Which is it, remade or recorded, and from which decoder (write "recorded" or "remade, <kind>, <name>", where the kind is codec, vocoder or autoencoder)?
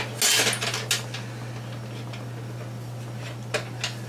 recorded